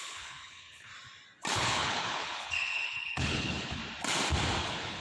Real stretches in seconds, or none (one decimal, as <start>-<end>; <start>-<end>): 0.9-1.5; 3.8-4.6